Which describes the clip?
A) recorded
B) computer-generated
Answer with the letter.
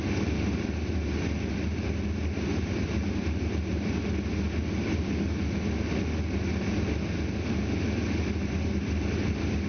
A